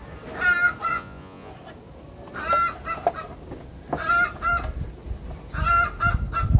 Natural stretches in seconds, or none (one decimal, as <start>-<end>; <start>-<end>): 0.0-0.9; 1.5-6.6

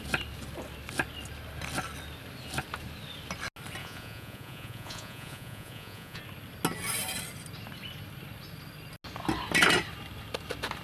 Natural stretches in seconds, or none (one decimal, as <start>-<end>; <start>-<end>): 0.0-3.8; 6.2-10.8